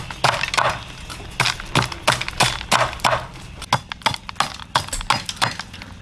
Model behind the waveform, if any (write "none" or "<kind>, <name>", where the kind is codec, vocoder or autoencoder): none